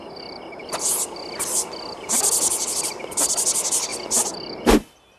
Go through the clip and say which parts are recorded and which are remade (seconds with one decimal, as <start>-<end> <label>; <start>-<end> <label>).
0.0-5.2 recorded